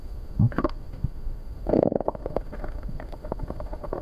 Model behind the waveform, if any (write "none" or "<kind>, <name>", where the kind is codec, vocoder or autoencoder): autoencoder, DAC-VAE